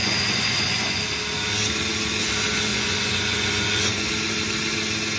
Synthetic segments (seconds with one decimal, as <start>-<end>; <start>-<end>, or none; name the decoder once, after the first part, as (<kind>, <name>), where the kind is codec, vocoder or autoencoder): 0.0-1.0 (vocoder, Vocos); 2.7-4.1